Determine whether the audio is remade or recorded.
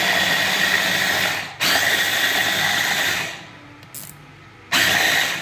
recorded